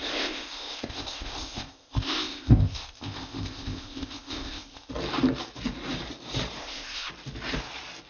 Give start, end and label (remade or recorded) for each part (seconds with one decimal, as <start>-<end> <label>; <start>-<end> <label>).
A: 0.0-4.9 remade; 4.9-6.6 recorded; 6.6-7.1 remade; 7.1-8.1 recorded